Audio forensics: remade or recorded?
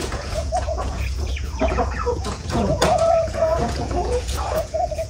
remade